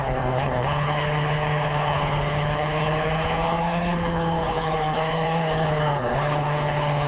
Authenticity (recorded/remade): remade